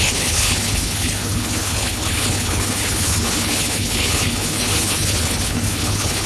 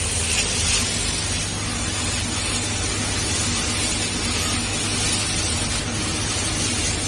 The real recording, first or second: second